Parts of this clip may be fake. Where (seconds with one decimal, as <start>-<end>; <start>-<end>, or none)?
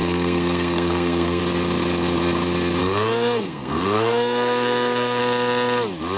0.0-1.4; 2.8-5.2